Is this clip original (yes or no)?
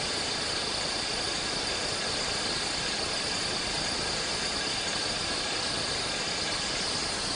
yes